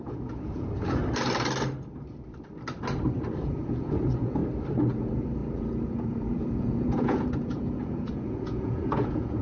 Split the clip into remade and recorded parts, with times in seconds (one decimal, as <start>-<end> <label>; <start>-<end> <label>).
0.0-1.0 remade; 1.0-3.4 recorded; 3.4-4.4 remade; 4.4-4.9 recorded; 4.9-9.4 remade